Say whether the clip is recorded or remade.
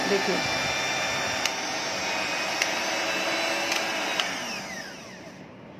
recorded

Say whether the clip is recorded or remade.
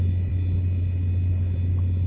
recorded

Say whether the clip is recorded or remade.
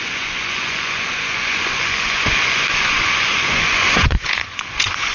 remade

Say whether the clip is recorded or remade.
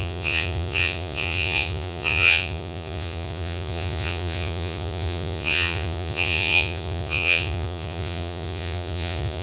remade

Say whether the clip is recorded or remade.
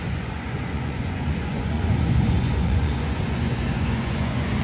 remade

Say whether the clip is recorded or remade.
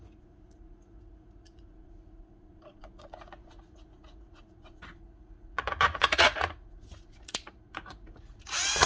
remade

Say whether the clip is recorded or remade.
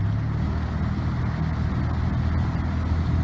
recorded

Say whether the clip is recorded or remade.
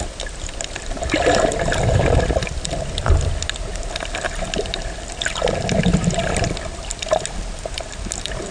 recorded